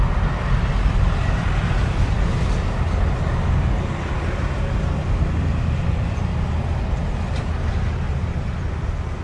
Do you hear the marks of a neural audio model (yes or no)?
no